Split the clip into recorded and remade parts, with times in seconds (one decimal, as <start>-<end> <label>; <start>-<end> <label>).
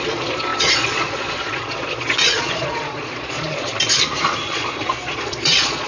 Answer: 0.0-3.7 remade; 3.7-4.5 recorded; 4.5-5.9 remade